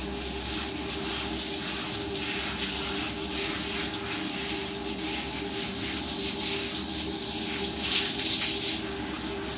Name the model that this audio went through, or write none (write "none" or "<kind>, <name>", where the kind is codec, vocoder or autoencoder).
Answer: none